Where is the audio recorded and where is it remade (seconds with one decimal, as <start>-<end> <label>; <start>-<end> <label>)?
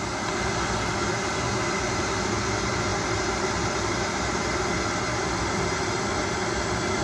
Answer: 0.0-7.0 recorded